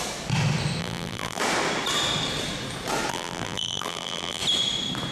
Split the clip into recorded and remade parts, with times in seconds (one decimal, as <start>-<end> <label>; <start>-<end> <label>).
0.0-0.8 recorded; 0.8-1.4 remade; 1.4-3.1 recorded; 3.1-4.4 remade; 4.4-5.1 recorded